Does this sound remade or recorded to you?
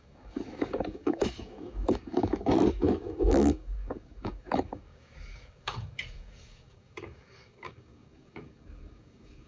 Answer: remade